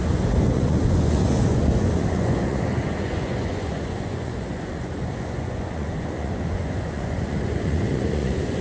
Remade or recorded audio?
remade